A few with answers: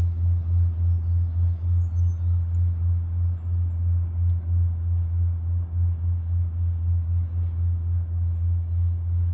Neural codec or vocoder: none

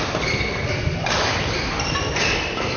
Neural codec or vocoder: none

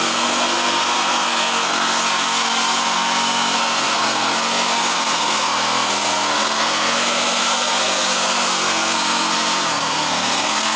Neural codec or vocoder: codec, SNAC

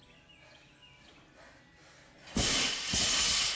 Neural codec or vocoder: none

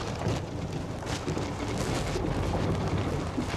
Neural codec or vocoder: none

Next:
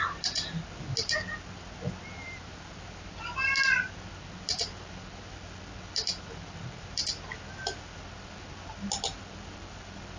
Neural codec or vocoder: none